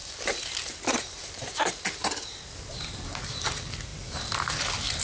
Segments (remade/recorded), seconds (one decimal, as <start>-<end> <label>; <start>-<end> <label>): 0.0-5.0 recorded